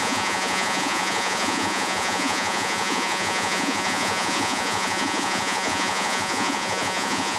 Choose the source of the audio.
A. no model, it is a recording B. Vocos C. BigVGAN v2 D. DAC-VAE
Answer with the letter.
B